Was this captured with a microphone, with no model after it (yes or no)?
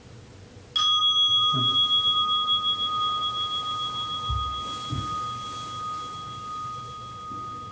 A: yes